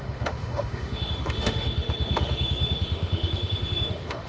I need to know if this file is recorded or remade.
remade